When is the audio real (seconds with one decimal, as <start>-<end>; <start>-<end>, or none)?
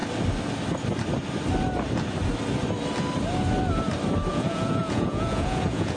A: 0.0-4.3